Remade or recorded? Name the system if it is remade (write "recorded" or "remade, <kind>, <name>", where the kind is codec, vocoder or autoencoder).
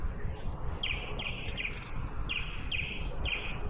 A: recorded